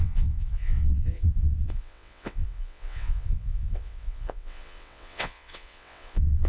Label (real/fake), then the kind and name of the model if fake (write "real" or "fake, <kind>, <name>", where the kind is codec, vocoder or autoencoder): fake, vocoder, WaveNeXt